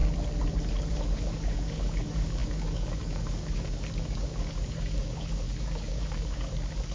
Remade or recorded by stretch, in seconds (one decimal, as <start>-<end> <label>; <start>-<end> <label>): 0.0-0.9 recorded; 0.9-6.9 remade